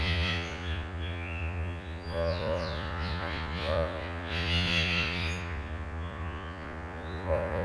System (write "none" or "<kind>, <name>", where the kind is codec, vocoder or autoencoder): vocoder, Vocos